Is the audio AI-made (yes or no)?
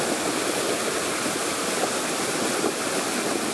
no